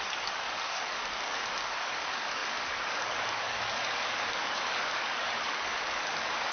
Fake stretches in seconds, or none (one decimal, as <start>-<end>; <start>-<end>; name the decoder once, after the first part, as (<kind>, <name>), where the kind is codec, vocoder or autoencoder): 0.0-6.5 (codec, DAC)